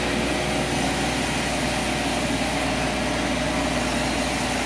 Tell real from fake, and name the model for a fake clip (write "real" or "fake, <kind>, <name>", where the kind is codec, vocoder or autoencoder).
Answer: real